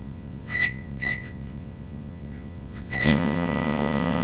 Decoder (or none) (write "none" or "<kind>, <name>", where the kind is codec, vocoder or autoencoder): vocoder, WaveNeXt